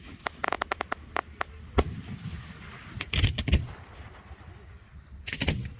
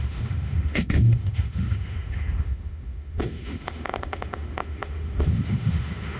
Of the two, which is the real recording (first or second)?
first